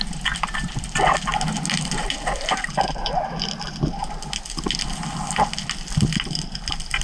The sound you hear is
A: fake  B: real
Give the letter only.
B